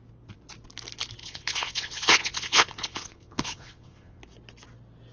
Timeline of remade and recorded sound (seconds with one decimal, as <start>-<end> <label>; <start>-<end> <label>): 0.0-1.2 recorded; 1.2-4.2 remade; 4.2-5.1 recorded